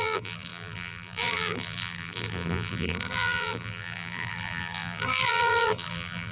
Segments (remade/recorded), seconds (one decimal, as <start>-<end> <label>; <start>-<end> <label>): 0.0-6.3 remade